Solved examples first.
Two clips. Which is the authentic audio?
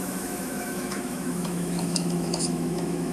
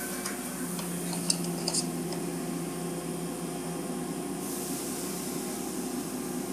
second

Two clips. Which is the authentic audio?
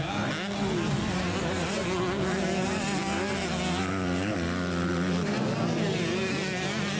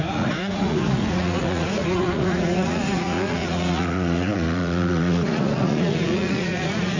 first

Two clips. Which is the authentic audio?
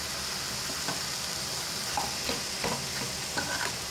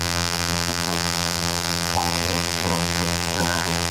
first